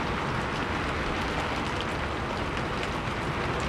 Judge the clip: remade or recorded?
recorded